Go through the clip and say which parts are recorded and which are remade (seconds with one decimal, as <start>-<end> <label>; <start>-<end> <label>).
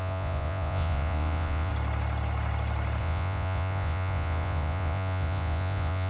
0.0-1.7 remade; 1.7-3.0 recorded; 3.0-6.1 remade